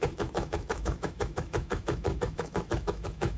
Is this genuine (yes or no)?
no